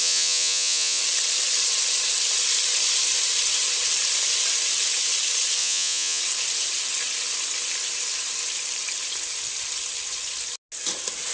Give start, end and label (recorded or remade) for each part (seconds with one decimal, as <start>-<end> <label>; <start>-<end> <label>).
0.0-1.0 remade; 1.0-5.6 recorded; 5.6-6.2 remade; 6.2-11.3 recorded